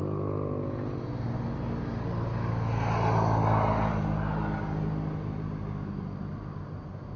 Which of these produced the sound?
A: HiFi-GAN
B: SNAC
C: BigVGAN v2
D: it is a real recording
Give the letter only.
D